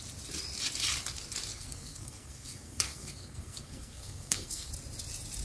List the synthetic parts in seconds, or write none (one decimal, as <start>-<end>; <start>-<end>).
1.5-4.7